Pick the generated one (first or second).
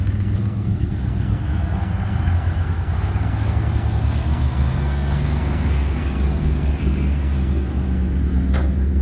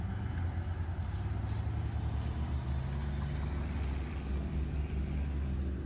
first